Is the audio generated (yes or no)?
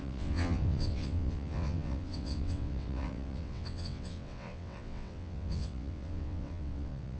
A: yes